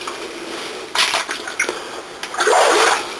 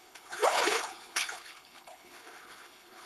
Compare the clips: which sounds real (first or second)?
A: first